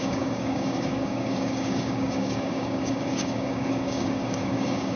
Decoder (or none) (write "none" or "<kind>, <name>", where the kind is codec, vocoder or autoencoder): codec, DAC